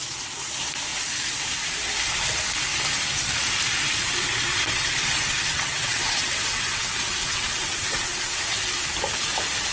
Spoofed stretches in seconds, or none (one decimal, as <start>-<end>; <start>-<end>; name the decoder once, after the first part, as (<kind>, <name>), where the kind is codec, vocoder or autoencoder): 4.5-8.4 (vocoder, WaveNeXt)

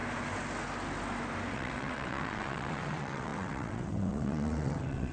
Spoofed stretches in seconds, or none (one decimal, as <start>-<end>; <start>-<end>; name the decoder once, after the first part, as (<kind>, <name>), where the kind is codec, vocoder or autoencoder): 1.5-5.1 (vocoder, WaveNeXt)

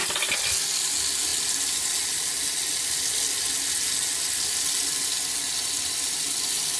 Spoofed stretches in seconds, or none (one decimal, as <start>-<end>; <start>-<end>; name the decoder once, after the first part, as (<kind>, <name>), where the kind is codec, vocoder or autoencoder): none

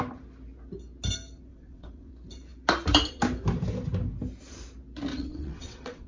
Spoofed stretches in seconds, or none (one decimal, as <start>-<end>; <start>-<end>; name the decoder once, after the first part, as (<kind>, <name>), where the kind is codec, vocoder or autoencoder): 1.5-2.1 (vocoder, WaveNeXt); 5.1-6.1

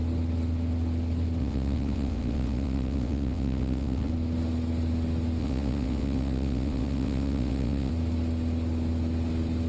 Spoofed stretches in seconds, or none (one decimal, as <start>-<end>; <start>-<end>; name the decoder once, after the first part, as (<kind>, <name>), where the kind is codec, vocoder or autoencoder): 1.4-4.1 (vocoder, WaveNeXt); 5.4-7.9